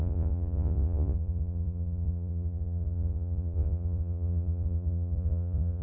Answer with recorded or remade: remade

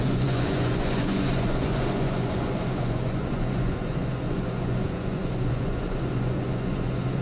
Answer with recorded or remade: remade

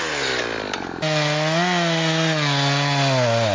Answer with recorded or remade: recorded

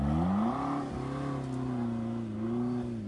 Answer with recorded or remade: recorded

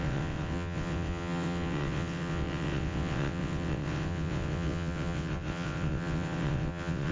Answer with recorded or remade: remade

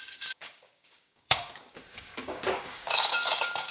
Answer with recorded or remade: remade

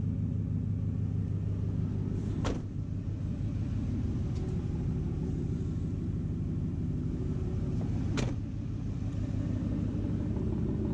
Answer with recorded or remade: recorded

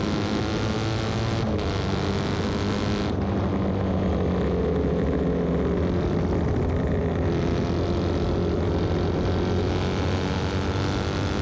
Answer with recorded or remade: recorded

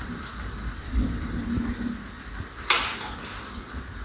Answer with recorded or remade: recorded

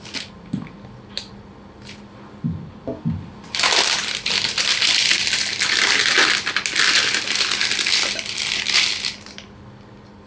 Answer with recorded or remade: recorded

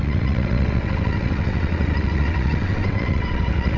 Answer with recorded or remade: remade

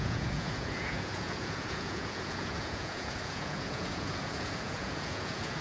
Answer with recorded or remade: remade